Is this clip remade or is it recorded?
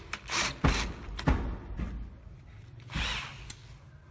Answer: recorded